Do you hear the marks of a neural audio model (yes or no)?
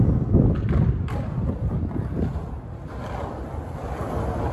no